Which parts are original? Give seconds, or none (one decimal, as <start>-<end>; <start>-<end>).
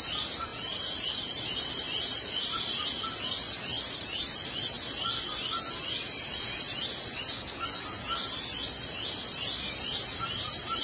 0.0-0.5; 2.3-10.8